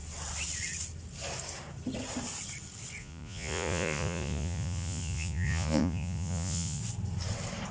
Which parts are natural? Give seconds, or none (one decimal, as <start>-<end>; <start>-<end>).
0.0-3.0; 6.8-7.7